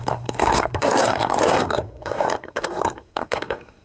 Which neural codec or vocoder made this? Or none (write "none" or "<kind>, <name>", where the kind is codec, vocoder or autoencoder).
codec, SNAC